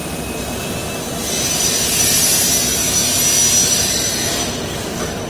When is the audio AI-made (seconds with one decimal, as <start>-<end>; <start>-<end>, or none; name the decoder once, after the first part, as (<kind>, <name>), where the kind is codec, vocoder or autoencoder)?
none